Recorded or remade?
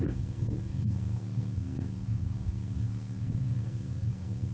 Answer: remade